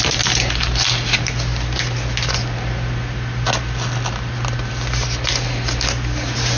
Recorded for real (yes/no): yes